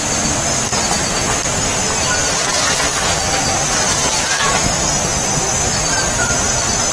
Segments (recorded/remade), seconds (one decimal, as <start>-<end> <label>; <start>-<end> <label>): 0.0-0.7 recorded; 0.7-1.3 remade; 1.3-2.2 recorded; 2.2-5.0 remade; 5.0-6.9 recorded